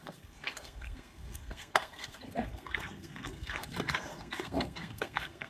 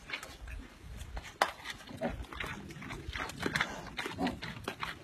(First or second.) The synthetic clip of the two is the first